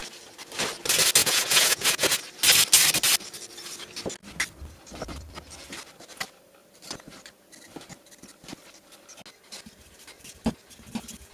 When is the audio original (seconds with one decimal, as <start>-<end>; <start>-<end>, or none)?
0.0-1.2; 2.2-11.3